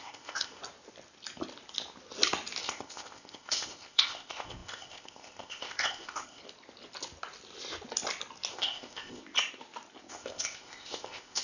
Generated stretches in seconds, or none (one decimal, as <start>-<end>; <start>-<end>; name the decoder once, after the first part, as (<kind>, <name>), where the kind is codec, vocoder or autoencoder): 0.0-0.6 (codec, ZipCodec); 2.6-6.4; 8.5-9.2; 10.1-11.4